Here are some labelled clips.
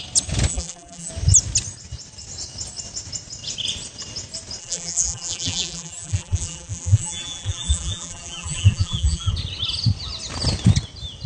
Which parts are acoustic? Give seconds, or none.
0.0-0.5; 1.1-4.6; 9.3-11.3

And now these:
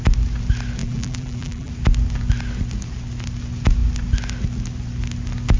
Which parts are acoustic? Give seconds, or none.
0.0-0.8; 1.7-5.6

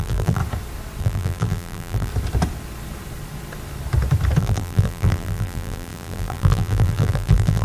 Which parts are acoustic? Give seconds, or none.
0.4-1.0; 2.1-4.4

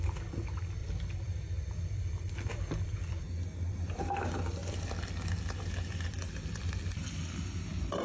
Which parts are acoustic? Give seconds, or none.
0.0-0.8; 3.2-4.6; 5.6-6.2; 6.9-8.0

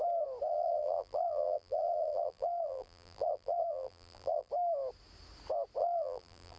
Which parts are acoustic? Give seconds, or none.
0.0-0.5; 4.5-5.8

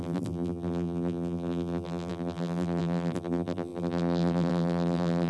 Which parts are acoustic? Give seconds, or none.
none

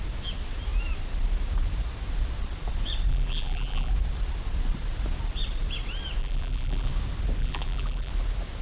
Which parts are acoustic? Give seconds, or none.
0.0-3.1; 3.9-6.2; 6.9-7.4; 8.1-8.6

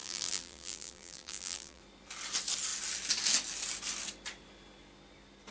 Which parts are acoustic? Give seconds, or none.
1.8-5.5